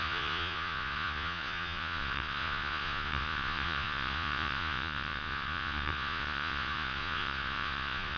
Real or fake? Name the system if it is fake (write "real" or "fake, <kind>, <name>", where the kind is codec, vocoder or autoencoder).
fake, vocoder, Vocos